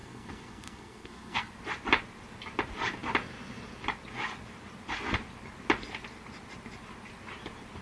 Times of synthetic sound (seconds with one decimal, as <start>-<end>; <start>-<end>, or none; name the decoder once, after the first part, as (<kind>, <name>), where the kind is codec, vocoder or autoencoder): 0.0-1.5 (codec, SNAC)